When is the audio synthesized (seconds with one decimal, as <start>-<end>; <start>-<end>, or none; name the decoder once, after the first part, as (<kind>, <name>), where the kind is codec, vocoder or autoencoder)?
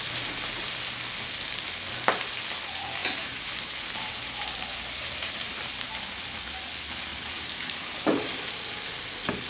3.0-5.9 (vocoder, BigVGAN v2); 7.1-8.5